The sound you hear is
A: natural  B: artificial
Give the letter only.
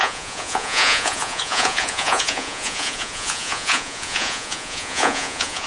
B